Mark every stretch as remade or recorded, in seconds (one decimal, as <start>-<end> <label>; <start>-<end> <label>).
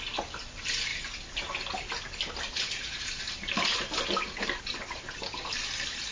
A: 0.0-6.1 recorded